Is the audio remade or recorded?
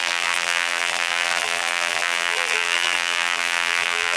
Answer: remade